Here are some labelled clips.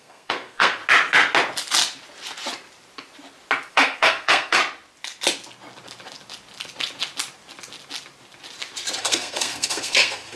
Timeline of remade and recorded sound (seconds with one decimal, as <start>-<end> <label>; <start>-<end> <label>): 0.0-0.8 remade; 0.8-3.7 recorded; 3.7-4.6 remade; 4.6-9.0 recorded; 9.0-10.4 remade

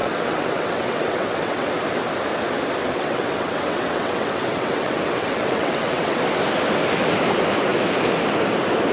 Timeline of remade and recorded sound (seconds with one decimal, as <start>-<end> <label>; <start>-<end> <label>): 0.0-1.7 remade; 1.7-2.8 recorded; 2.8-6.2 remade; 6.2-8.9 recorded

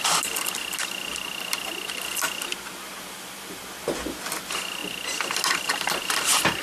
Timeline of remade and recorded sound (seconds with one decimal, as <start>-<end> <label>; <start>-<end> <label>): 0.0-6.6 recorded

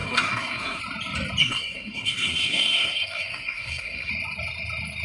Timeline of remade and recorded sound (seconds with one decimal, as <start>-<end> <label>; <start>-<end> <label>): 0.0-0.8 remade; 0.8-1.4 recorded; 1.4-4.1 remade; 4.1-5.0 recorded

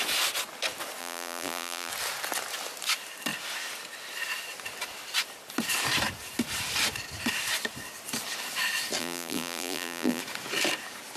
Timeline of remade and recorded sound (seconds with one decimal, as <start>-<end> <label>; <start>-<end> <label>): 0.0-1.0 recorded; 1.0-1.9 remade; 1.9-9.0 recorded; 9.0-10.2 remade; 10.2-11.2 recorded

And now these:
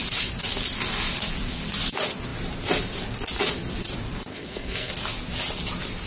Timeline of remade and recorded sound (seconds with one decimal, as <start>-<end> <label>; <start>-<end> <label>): 0.0-4.3 recorded; 4.3-4.9 remade; 4.9-6.1 recorded

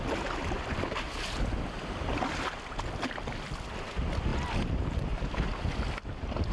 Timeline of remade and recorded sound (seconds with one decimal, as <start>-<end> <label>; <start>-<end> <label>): 0.0-6.5 recorded